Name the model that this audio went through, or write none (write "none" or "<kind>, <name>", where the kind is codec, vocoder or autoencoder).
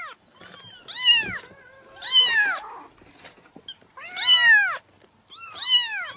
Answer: none